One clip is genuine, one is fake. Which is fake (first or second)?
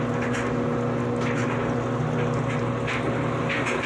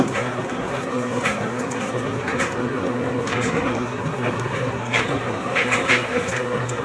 second